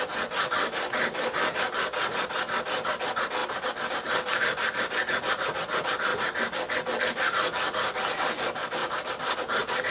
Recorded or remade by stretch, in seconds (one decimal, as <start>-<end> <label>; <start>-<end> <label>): 0.0-9.9 recorded